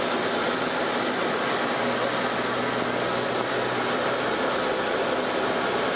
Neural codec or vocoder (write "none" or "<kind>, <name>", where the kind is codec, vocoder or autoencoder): none